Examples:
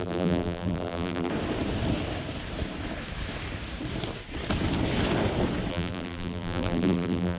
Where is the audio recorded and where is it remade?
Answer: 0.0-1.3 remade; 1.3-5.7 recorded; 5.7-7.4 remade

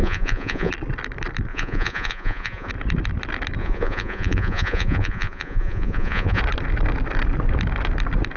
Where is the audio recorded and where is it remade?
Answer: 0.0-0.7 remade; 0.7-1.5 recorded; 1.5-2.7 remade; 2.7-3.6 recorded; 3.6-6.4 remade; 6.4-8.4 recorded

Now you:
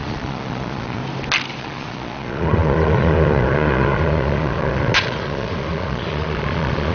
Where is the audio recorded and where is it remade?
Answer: 0.0-1.0 remade; 1.0-1.6 recorded; 1.6-6.9 remade

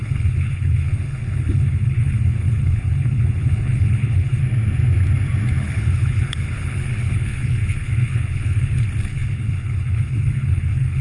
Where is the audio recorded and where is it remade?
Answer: 0.0-4.4 remade; 4.4-5.6 recorded; 5.6-11.0 remade

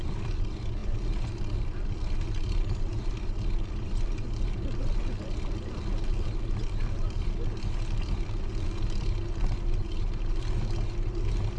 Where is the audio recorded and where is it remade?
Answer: 0.0-11.6 recorded